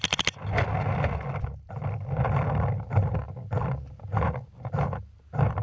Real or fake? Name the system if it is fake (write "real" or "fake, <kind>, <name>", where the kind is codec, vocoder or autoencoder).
real